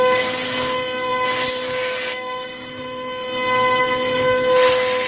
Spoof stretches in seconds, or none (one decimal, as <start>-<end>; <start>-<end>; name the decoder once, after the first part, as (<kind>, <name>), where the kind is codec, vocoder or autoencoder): none